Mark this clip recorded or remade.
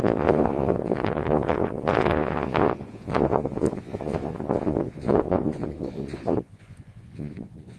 remade